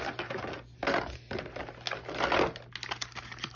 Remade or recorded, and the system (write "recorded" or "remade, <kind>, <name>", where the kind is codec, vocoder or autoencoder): recorded